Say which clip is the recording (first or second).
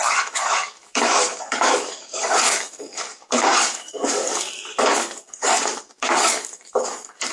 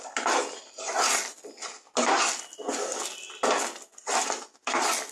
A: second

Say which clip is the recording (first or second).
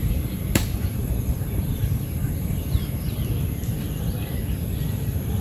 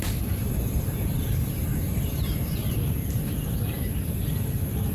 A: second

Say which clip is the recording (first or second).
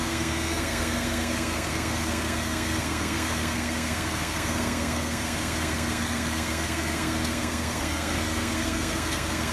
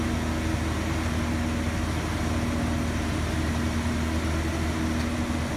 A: second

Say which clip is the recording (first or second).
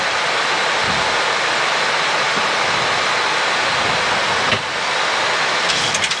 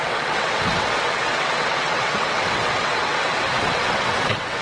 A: first